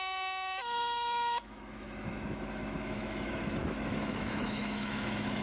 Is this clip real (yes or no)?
no